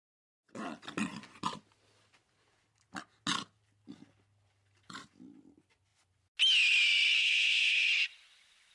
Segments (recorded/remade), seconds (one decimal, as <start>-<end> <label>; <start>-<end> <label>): 0.0-7.2 recorded; 7.2-7.9 remade; 7.9-8.7 recorded